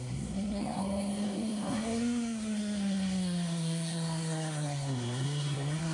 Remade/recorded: remade